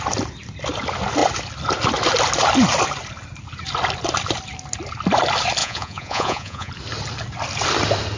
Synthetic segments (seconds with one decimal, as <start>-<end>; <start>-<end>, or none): 5.6-6.7